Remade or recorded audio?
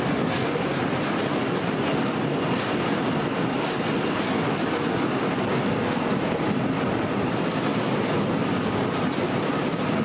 remade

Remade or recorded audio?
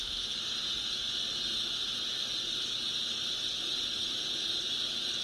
remade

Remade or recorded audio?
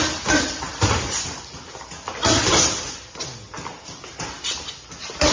recorded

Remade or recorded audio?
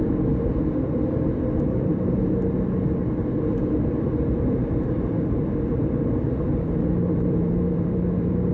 remade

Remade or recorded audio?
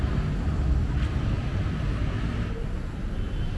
recorded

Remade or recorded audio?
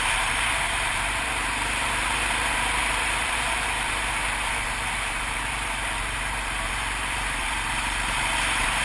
remade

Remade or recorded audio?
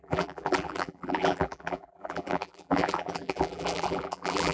remade